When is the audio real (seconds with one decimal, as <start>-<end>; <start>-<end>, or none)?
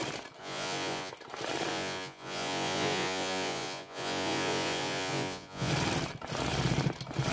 0.0-0.4; 1.1-1.7; 5.7-7.3